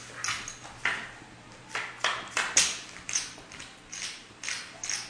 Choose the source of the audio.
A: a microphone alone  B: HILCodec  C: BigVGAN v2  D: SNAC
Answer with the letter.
A